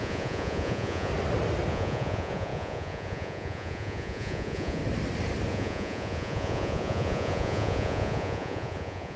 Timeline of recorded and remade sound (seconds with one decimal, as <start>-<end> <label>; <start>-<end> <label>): 0.0-1.1 remade; 1.1-1.7 recorded; 1.7-4.8 remade; 4.8-5.5 recorded; 5.5-9.2 remade